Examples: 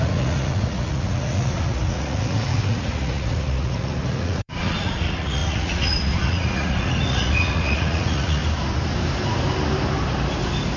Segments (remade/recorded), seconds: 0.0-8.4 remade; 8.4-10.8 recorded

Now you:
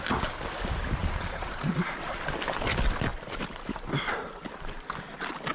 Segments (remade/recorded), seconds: 0.0-1.0 recorded; 1.0-1.7 remade; 1.7-5.5 recorded

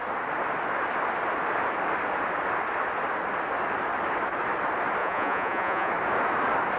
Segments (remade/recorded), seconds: 0.0-5.0 recorded; 5.0-5.9 remade; 5.9-6.8 recorded

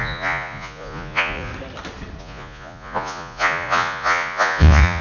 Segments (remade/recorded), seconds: 0.0-1.5 remade; 1.5-2.2 recorded; 2.2-5.0 remade